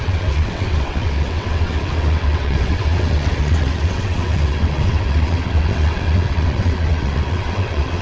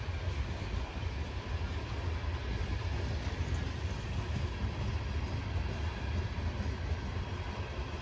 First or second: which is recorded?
second